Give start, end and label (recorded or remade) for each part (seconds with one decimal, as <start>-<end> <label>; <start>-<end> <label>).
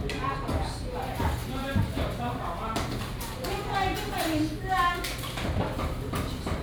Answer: 0.0-6.6 recorded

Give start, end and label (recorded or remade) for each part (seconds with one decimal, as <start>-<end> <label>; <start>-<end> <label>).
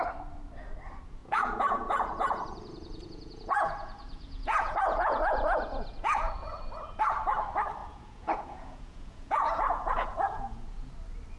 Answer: 0.0-1.2 recorded; 1.2-6.3 remade; 6.3-7.8 recorded; 7.8-10.9 remade; 10.9-11.4 recorded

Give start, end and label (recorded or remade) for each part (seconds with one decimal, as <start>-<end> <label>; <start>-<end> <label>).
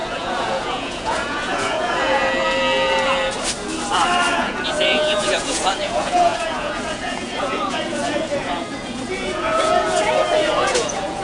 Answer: 0.0-2.2 remade; 2.2-4.3 recorded; 4.3-11.2 remade